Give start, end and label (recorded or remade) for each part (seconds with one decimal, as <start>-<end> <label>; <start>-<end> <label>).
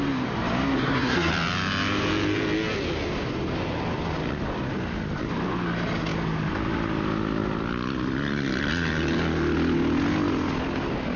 0.0-0.8 recorded; 0.8-1.3 remade; 1.3-11.2 recorded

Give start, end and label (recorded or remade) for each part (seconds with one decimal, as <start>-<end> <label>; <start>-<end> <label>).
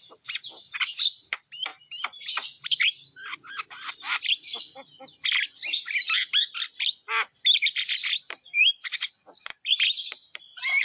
0.0-10.8 remade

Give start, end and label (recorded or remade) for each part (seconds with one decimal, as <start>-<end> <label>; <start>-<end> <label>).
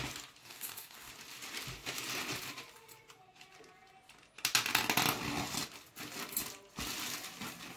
0.0-0.4 recorded; 0.4-1.1 remade; 1.1-7.8 recorded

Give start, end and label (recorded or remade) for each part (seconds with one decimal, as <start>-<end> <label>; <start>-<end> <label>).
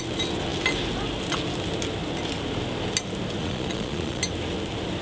0.0-3.4 recorded; 3.4-4.2 remade; 4.2-5.0 recorded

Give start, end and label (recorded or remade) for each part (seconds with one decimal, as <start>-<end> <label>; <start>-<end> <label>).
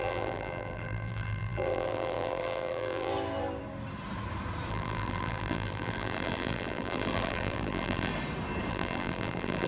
0.0-3.1 remade; 3.1-4.7 recorded; 4.7-8.1 remade; 8.1-8.7 recorded; 8.7-9.7 remade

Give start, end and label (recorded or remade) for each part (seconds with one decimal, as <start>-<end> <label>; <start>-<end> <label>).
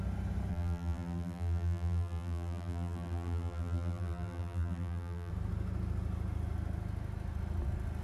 0.0-0.5 recorded; 0.5-5.3 remade; 5.3-8.0 recorded